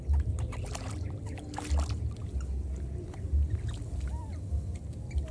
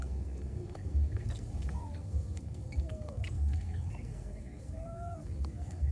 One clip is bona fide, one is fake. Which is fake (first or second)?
second